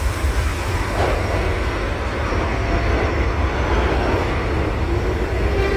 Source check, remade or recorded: recorded